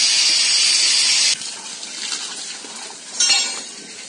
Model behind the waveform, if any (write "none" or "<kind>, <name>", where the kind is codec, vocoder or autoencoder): none